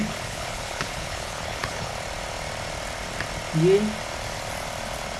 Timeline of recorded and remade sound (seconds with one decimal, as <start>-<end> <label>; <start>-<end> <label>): 0.0-1.9 remade; 1.9-5.2 recorded